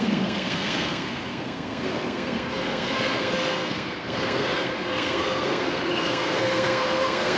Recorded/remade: remade